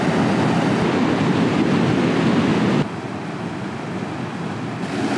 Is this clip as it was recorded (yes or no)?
yes